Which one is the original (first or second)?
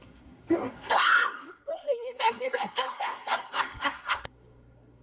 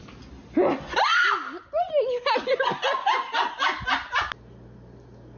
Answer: second